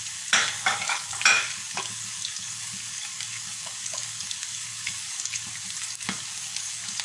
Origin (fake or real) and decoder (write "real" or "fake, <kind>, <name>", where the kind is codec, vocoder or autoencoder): fake, codec, DAC